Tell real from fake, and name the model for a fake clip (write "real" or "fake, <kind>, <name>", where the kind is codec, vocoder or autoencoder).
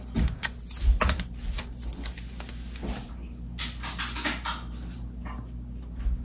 real